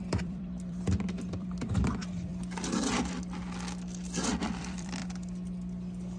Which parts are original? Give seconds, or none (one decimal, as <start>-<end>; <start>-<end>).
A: 2.3-4.4; 5.0-6.2

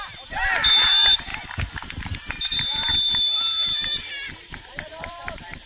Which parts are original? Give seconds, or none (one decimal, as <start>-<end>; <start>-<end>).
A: 1.3-2.0; 3.1-4.3

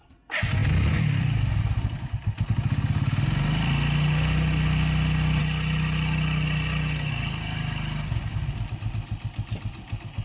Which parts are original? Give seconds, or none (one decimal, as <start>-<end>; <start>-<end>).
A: 0.0-10.2

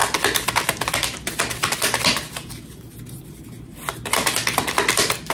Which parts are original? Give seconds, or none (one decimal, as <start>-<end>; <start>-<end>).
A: 0.0-5.3

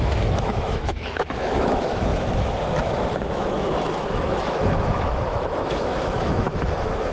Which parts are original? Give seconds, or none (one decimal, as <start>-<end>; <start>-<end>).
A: none